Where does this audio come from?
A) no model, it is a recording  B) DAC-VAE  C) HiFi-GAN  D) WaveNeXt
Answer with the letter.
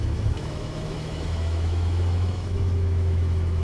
B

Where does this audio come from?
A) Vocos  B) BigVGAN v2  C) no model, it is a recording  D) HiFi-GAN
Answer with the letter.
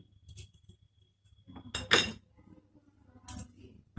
C